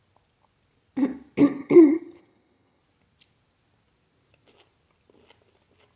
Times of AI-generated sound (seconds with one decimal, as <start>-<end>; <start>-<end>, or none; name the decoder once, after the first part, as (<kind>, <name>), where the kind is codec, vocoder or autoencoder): 1.6-2.8 (vocoder, HiFi-GAN)

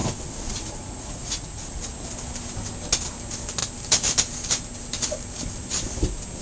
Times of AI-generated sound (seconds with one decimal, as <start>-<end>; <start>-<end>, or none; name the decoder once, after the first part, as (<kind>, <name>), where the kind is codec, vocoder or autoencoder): 0.0-1.9 (vocoder, Vocos)

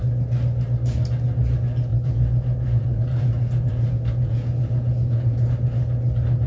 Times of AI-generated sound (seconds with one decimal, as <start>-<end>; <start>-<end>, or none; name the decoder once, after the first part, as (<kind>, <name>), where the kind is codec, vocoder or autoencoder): 1.9-5.5 (vocoder, Vocos)

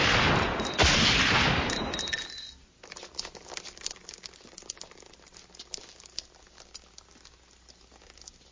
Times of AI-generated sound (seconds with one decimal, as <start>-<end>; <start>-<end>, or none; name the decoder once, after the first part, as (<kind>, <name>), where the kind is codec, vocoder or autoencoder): none

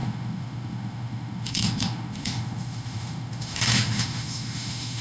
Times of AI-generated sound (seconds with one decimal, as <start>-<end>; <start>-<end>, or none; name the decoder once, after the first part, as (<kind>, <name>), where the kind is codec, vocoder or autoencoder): 0.0-5.0 (autoencoder, DAC-VAE)

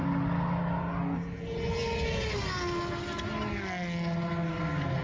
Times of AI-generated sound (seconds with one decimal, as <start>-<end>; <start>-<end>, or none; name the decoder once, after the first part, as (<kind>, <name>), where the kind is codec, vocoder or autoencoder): none

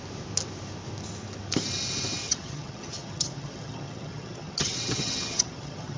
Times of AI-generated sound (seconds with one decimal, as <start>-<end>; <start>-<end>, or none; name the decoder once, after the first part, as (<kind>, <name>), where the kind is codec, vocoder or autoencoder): 2.2-6.0 (vocoder, HiFi-GAN)

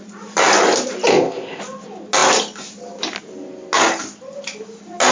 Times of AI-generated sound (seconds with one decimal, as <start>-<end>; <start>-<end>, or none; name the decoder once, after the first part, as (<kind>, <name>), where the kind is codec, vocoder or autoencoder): 1.1-1.6 (codec, ZipCodec)